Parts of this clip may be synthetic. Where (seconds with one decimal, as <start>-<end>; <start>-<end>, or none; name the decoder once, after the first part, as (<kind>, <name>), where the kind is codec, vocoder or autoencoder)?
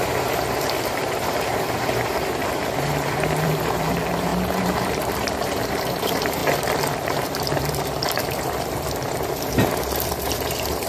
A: 0.0-6.4 (vocoder, BigVGAN v2); 7.1-10.9